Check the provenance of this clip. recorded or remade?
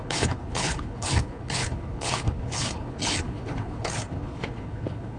remade